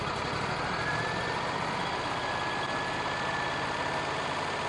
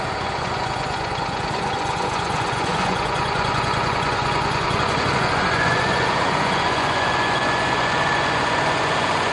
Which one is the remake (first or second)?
second